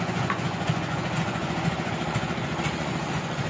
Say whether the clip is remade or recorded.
remade